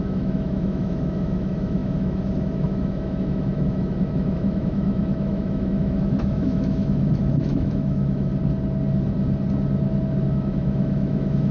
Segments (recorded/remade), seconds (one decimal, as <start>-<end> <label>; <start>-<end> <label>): 0.0-8.3 remade; 8.3-10.3 recorded; 10.3-11.5 remade